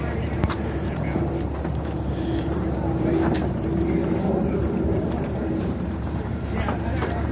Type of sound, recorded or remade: remade